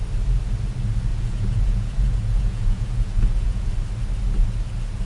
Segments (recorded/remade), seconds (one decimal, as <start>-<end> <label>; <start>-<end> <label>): 0.0-1.1 recorded; 1.1-3.7 remade; 3.7-5.1 recorded